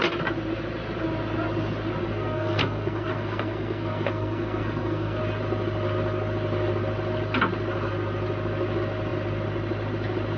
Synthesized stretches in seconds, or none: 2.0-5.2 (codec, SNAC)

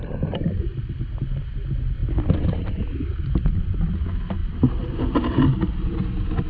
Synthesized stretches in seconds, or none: 2.0-3.3 (vocoder, BigVGAN v2)

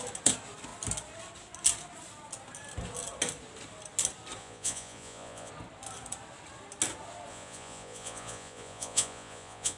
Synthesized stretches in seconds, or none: 4.4-5.5 (vocoder, Vocos); 7.3-9.8

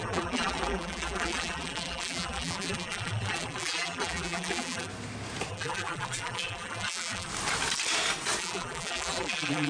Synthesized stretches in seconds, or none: 0.0-4.9 (vocoder, BigVGAN v2); 5.5-7.3; 8.4-9.7